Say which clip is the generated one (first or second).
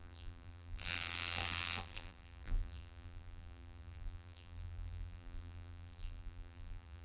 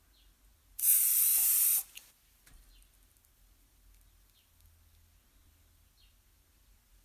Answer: first